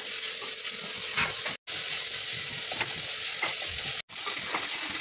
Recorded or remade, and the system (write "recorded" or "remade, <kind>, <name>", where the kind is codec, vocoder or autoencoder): recorded